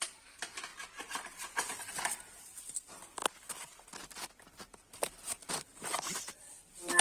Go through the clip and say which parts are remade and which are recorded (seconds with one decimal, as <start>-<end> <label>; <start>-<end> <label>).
0.0-3.2 remade; 3.2-5.5 recorded; 5.5-7.0 remade